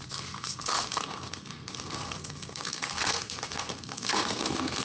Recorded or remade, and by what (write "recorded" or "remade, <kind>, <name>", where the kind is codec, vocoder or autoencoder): remade, codec, SNAC